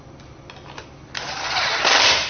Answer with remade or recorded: recorded